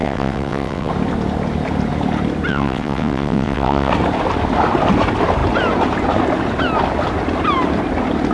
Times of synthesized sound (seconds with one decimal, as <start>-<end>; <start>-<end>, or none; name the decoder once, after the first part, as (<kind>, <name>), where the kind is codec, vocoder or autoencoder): 0.0-0.9 (vocoder, WaveNeXt); 2.5-3.9